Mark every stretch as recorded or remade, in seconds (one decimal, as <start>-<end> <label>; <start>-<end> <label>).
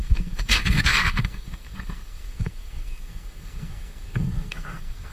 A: 0.0-5.1 remade